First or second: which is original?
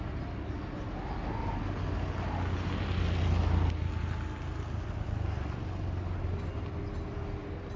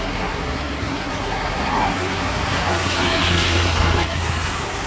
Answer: first